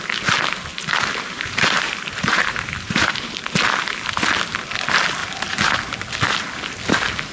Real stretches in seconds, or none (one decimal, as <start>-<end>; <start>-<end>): 0.0-0.7; 3.4-5.2; 5.8-7.3